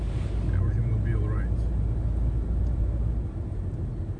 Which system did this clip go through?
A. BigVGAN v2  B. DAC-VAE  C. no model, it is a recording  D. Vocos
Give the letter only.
C